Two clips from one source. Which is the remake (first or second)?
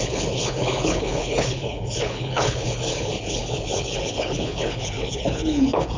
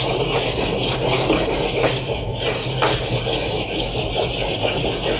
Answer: first